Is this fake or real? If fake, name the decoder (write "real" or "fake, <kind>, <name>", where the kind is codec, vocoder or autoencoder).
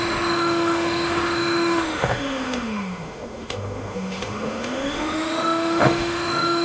fake, autoencoder, DAC-VAE